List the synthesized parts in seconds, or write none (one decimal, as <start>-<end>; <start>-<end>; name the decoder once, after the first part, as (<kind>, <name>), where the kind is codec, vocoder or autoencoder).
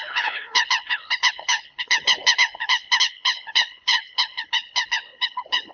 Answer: 0.0-5.7 (codec, HILCodec)